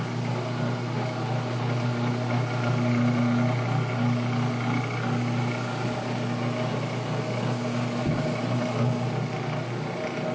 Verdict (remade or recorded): recorded